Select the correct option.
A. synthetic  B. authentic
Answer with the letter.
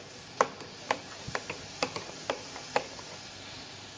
B